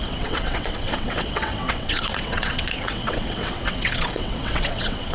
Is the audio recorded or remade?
remade